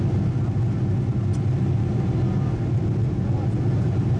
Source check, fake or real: real